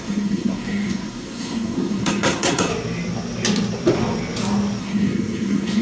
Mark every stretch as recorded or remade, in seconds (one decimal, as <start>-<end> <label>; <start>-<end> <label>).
0.0-2.7 remade; 2.7-4.8 recorded; 4.8-5.8 remade